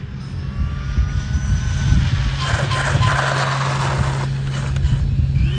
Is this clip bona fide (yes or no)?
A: yes